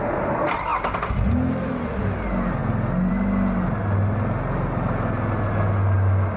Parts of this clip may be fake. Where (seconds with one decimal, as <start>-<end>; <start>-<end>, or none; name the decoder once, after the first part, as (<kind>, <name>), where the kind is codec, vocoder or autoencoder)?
none